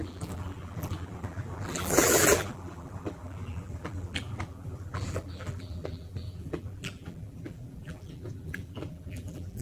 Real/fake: fake